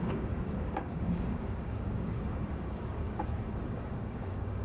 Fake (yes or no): yes